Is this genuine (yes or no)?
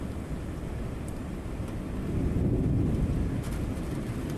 no